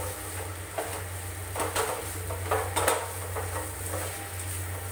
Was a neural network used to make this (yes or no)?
no